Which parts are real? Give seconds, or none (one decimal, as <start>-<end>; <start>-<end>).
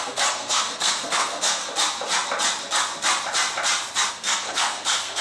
1.6-4.1